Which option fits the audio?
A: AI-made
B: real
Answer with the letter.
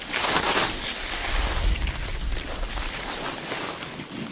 B